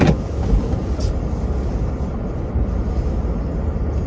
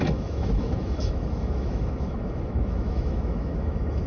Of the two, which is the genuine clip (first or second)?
first